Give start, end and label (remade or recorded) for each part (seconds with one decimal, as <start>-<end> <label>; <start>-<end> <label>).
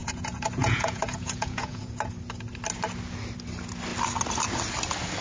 0.0-2.0 remade; 2.0-5.2 recorded